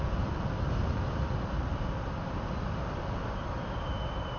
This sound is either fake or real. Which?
real